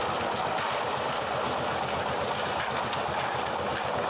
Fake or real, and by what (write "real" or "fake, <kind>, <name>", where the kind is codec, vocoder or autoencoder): real